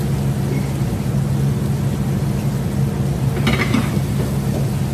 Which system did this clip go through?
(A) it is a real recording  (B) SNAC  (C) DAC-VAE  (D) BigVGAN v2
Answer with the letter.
A